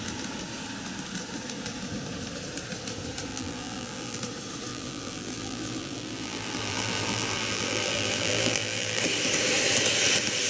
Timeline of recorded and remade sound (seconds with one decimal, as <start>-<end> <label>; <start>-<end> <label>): 0.0-3.3 recorded; 3.3-4.2 remade; 4.2-4.7 recorded; 4.7-9.0 remade; 9.0-10.5 recorded